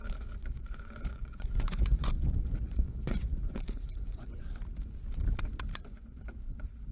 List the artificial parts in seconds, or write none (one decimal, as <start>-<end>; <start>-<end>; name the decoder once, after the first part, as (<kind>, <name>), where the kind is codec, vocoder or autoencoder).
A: 0.4-4.5 (vocoder, Vocos); 5.7-6.2